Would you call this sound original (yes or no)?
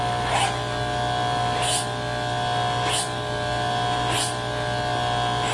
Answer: yes